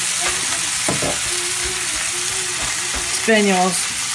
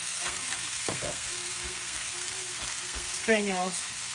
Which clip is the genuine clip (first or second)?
first